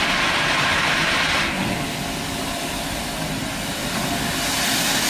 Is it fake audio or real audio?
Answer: real